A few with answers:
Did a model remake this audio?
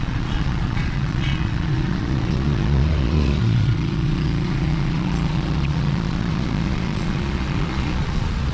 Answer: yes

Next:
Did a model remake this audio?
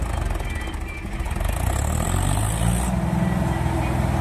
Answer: no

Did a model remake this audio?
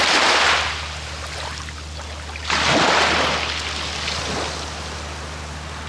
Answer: no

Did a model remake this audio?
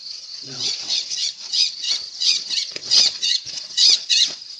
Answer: yes